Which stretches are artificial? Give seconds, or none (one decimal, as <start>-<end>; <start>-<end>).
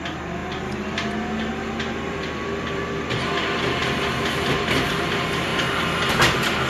0.0-3.8; 4.3-5.5